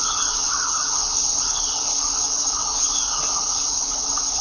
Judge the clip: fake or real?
fake